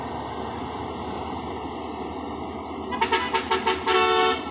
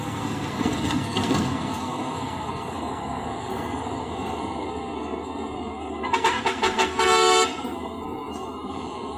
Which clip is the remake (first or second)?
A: second